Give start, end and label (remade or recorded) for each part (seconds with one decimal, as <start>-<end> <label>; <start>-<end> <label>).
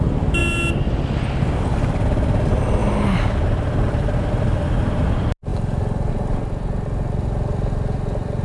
0.0-8.4 recorded